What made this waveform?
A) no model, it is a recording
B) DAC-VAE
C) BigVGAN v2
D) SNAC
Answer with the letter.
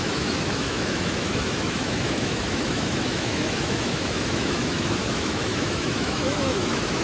B